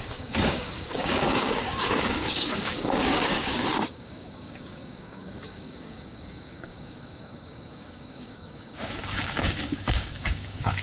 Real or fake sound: fake